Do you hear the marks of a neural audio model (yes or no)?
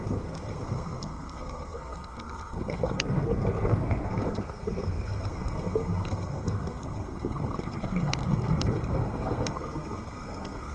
yes